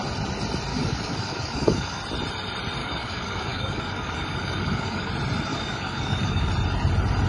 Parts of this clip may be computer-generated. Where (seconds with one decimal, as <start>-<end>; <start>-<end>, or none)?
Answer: 0.7-2.0; 2.8-5.1; 5.5-6.5